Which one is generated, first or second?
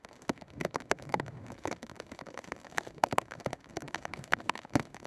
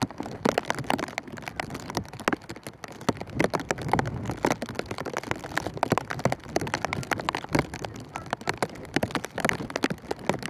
first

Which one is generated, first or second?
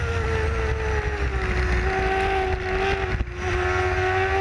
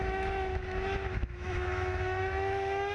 second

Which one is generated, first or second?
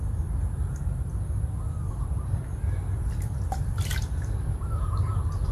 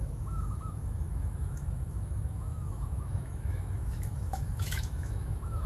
second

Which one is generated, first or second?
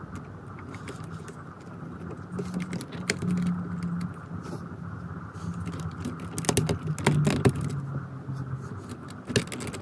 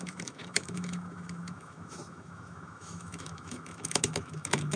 second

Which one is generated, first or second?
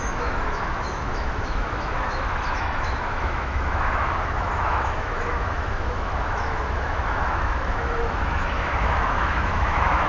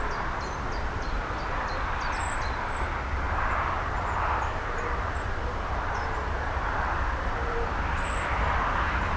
first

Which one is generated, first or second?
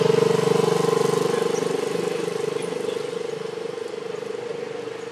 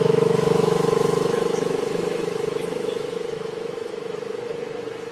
second